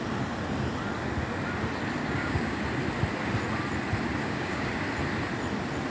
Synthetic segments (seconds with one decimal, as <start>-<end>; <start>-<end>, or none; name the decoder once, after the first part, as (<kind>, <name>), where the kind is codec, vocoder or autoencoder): 2.0-2.6 (codec, DAC); 4.2-4.8